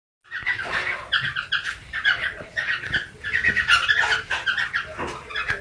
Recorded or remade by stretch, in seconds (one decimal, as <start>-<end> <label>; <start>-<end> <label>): 0.0-2.2 recorded; 2.2-2.8 remade; 2.8-5.6 recorded